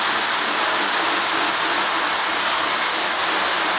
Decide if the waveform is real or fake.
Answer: real